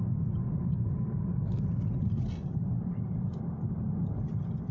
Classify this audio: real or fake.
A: real